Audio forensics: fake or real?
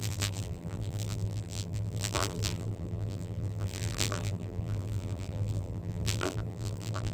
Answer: fake